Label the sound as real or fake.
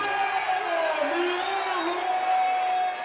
real